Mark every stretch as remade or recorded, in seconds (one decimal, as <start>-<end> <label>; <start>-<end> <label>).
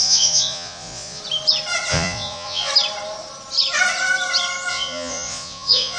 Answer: 0.0-1.2 remade; 1.2-1.9 recorded; 1.9-2.7 remade; 2.7-4.7 recorded; 4.7-6.0 remade